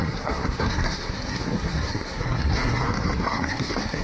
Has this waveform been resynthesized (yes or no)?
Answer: yes